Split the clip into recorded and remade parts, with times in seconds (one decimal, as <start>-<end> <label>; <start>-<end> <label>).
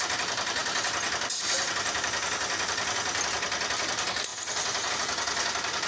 0.0-5.9 recorded